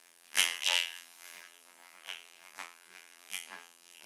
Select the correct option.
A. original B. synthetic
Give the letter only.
B